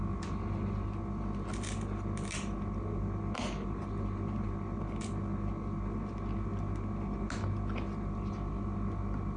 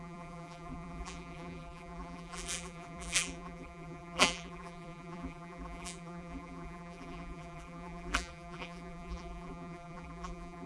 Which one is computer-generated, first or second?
second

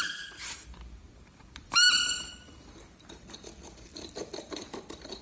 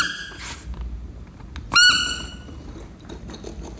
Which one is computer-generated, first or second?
first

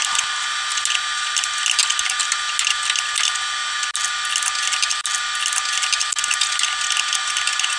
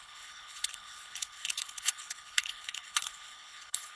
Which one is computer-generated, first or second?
second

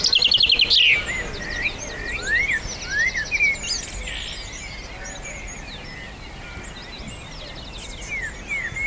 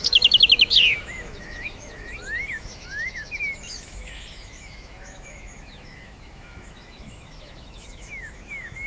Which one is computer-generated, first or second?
second